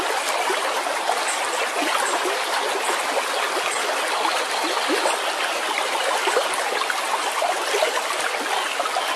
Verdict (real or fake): real